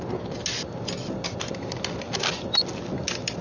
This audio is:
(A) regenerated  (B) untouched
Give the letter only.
B